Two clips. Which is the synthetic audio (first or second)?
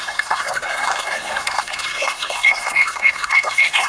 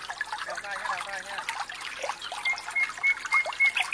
first